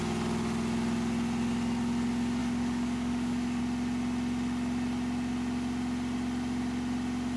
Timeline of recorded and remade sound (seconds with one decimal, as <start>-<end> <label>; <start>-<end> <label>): 0.0-2.4 recorded; 2.4-3.6 remade; 3.6-7.4 recorded